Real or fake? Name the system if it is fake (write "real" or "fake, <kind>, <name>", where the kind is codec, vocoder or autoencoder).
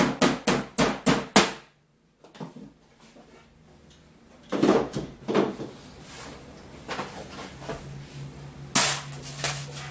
real